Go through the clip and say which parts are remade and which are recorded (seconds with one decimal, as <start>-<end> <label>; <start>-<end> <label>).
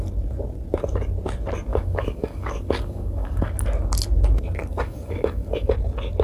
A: 0.0-1.7 recorded; 1.7-3.5 remade; 3.5-4.7 recorded; 4.7-5.7 remade; 5.7-6.2 recorded